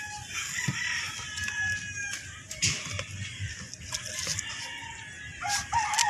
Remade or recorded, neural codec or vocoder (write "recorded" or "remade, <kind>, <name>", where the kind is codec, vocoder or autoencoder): recorded